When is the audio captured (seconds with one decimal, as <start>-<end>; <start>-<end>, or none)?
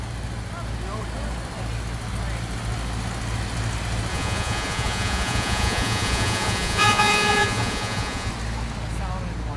0.0-4.1; 8.3-9.6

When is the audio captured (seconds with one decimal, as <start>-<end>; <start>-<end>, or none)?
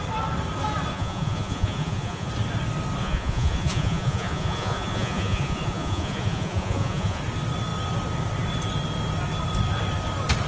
0.0-0.9; 2.3-3.0; 7.2-10.5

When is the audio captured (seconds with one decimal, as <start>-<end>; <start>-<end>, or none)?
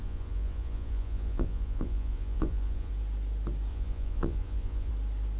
2.9-3.7; 4.9-5.4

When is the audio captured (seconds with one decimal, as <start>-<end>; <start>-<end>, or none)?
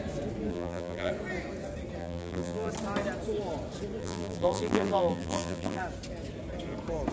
0.0-0.5; 1.1-2.0; 2.7-4.0; 5.8-7.1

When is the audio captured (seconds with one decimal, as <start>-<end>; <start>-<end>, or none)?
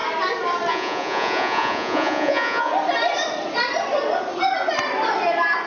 0.0-0.7; 2.7-5.7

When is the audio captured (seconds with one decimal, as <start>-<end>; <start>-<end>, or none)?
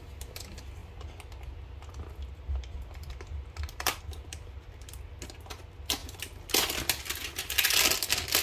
0.0-8.4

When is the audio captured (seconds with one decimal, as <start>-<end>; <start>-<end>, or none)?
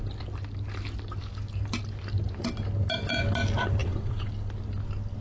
0.0-3.8; 4.3-5.2